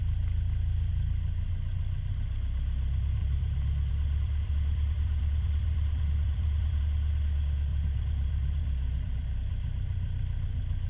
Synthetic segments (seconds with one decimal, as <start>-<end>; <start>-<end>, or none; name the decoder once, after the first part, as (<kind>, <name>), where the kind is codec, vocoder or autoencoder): 3.2-6.8 (vocoder, BigVGAN v2); 7.7-9.4